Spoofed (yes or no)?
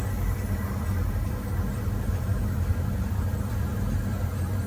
no